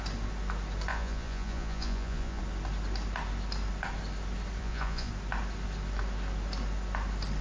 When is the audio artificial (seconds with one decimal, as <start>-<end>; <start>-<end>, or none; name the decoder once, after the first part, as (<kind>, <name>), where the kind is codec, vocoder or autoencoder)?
0.9-2.4 (vocoder, Vocos); 4.6-5.1